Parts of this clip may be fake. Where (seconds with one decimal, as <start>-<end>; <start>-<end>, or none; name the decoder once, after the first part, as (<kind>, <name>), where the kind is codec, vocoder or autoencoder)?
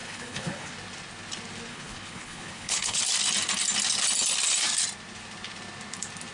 0.0-0.7 (codec, HILCodec); 1.7-3.0